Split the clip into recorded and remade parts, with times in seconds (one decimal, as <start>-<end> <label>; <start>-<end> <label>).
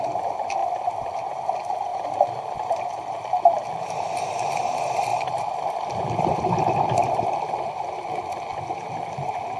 0.0-1.9 recorded; 1.9-3.0 remade; 3.0-5.1 recorded; 5.1-6.4 remade; 6.4-9.6 recorded